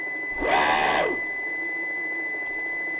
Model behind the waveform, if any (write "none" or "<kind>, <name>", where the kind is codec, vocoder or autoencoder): none